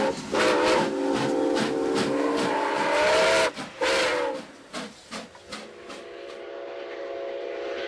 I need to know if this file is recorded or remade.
recorded